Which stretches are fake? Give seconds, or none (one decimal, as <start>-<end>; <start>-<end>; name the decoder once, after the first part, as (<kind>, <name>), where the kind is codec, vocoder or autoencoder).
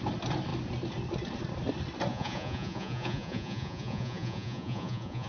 2.1-5.3 (vocoder, Vocos)